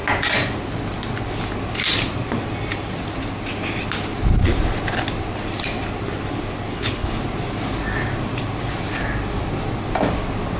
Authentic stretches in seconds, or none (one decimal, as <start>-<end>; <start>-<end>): 0.0-6.7; 7.2-10.6